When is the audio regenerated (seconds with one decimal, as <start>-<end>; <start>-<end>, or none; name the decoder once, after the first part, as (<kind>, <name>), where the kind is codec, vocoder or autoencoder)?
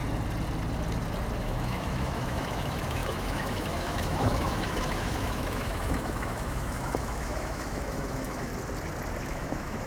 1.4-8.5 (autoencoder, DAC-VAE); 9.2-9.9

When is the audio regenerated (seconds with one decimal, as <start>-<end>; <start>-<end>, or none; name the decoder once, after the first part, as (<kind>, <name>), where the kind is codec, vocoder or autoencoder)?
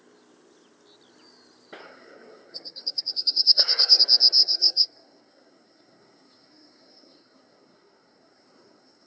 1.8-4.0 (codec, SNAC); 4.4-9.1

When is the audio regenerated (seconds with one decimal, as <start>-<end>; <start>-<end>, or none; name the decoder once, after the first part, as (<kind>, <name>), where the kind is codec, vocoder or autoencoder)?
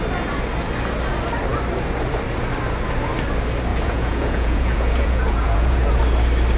3.7-6.0 (vocoder, Vocos)